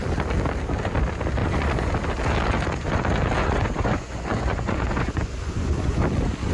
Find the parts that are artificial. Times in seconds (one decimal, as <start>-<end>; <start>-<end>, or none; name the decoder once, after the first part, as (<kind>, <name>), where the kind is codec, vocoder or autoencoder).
1.4-1.9 (vocoder, Vocos); 3.4-6.0